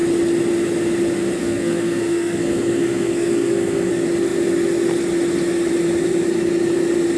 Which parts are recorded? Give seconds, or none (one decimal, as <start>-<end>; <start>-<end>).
0.0-1.4; 3.9-7.2